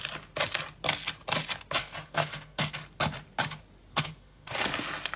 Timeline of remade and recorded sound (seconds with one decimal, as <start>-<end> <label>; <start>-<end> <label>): 0.0-1.8 recorded; 1.8-2.6 remade; 2.6-3.9 recorded; 3.9-4.5 remade; 4.5-5.2 recorded